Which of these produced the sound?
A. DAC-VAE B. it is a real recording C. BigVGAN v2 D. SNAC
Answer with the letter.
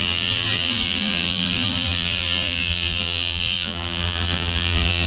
C